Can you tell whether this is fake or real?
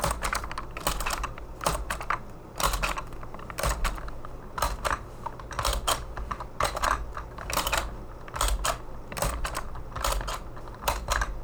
real